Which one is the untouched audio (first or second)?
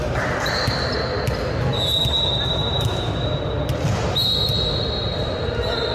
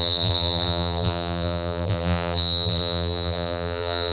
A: first